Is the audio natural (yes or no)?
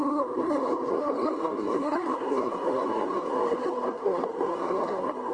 no